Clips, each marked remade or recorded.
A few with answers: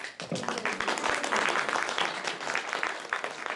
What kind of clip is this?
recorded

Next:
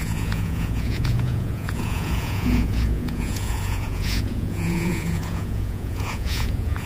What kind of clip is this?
remade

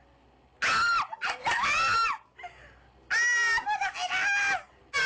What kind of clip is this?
recorded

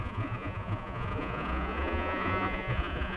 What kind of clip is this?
remade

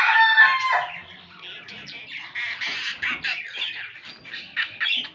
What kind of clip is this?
recorded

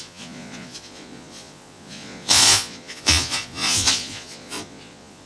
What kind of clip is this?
remade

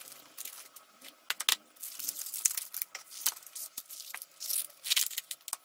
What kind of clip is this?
recorded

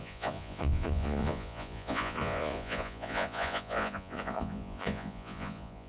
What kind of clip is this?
remade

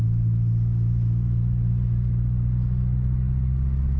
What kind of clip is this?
recorded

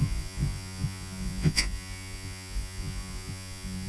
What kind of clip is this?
remade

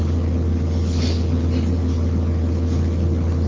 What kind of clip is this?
recorded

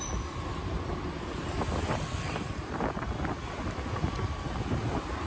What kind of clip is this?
recorded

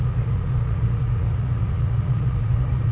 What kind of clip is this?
remade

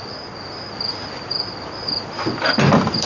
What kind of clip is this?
recorded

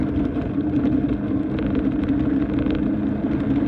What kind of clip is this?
recorded